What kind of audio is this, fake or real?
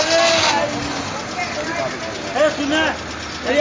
real